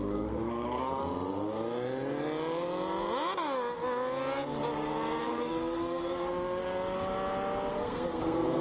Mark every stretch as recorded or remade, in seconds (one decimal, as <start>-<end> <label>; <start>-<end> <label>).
0.0-1.0 remade; 1.0-5.2 recorded; 5.2-6.0 remade; 6.0-7.7 recorded; 7.7-8.6 remade